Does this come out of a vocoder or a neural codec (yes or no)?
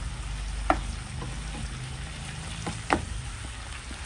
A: no